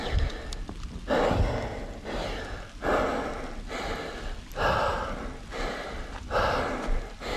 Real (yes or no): yes